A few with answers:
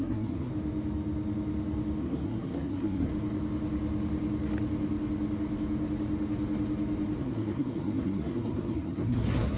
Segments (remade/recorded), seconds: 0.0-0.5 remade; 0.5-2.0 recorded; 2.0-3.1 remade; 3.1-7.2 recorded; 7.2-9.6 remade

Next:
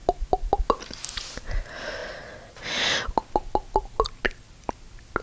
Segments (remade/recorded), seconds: 0.0-5.2 recorded

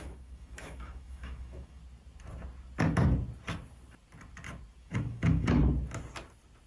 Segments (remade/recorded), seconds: 0.0-1.8 remade; 1.8-4.8 recorded; 4.8-5.6 remade; 5.6-6.7 recorded

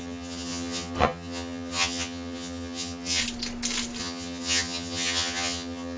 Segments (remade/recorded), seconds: 0.0-3.2 remade; 3.2-4.0 recorded; 4.0-6.0 remade

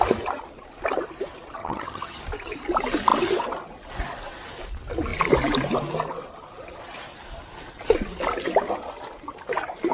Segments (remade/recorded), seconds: 0.0-1.6 recorded; 1.6-2.2 remade; 2.2-9.9 recorded

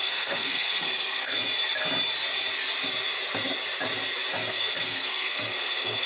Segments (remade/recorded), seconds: 0.0-1.4 remade; 1.4-4.5 recorded; 4.5-6.1 remade